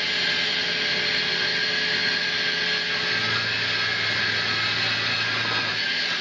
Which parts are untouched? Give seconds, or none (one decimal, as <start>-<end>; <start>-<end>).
0.0-6.2